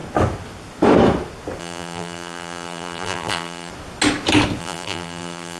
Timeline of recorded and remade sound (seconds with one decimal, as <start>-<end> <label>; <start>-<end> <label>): 0.0-1.6 recorded; 1.6-3.7 remade; 3.7-4.6 recorded; 4.6-5.6 remade